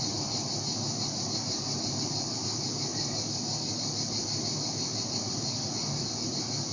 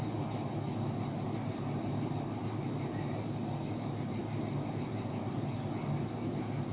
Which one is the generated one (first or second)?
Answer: first